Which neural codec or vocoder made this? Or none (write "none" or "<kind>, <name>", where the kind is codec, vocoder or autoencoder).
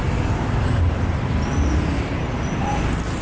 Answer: none